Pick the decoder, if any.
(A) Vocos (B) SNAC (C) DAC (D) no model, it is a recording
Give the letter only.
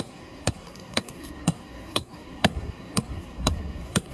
B